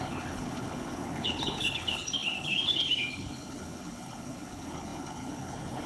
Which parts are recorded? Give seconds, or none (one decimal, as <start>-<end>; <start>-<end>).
none